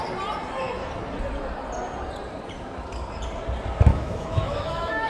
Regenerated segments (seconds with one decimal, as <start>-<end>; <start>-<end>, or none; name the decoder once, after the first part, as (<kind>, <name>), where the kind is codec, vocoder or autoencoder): 3.9-5.1 (autoencoder, DAC-VAE)